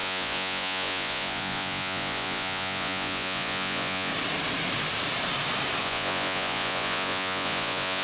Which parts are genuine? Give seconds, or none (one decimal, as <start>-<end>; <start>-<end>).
4.1-5.8